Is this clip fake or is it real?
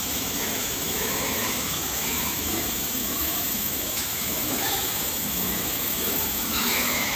fake